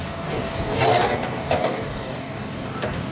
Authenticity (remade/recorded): remade